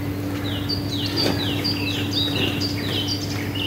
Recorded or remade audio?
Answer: recorded